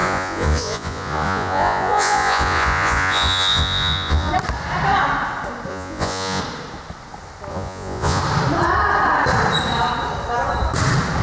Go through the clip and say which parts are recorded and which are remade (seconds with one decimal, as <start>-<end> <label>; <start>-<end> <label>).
0.0-4.3 remade; 4.3-5.7 recorded; 5.7-6.4 remade; 6.4-7.5 recorded; 7.5-8.2 remade; 8.2-11.2 recorded